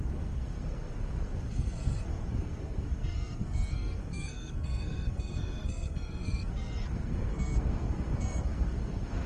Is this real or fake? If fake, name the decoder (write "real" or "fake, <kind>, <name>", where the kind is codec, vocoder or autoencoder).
fake, codec, SNAC